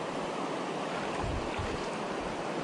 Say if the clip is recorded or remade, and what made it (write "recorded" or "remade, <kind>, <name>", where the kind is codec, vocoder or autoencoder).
recorded